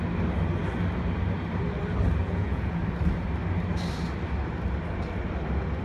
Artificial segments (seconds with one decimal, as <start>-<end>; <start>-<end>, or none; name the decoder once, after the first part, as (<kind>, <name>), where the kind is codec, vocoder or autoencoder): 2.2-2.8 (vocoder, Vocos)